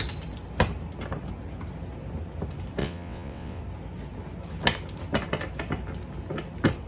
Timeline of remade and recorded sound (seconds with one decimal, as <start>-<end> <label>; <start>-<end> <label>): 0.0-2.8 recorded; 2.8-3.6 remade; 3.6-6.9 recorded